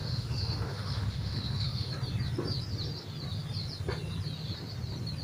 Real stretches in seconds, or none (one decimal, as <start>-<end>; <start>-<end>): 1.9-5.2